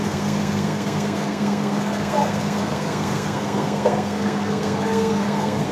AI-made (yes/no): yes